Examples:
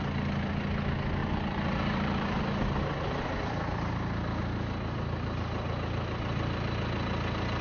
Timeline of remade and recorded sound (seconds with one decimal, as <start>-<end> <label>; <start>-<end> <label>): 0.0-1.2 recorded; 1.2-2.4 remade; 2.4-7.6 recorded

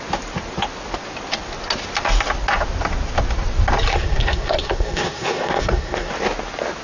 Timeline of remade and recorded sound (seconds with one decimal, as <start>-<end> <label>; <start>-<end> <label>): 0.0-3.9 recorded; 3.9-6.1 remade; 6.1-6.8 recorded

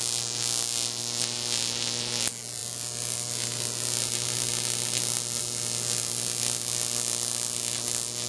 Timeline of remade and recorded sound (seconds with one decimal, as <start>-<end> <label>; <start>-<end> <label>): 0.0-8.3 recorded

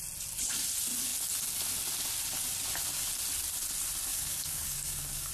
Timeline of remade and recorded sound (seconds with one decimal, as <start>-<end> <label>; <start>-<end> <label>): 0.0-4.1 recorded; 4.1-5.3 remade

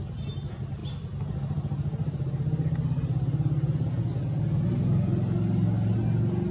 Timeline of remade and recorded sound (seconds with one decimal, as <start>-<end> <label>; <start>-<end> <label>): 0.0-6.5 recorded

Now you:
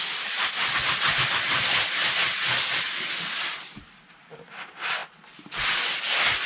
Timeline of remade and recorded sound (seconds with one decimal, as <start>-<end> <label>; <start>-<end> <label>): 0.0-6.5 recorded

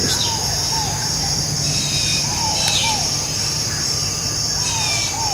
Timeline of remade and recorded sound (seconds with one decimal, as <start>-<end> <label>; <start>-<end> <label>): 0.0-1.0 recorded; 1.0-1.5 remade; 1.5-2.1 recorded; 2.1-4.3 remade; 4.3-5.3 recorded